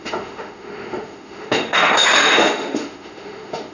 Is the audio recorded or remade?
remade